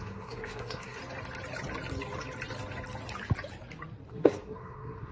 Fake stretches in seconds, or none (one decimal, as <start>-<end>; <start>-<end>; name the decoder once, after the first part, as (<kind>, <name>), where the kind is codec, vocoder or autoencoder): 0.0-1.0 (codec, SNAC); 4.1-5.1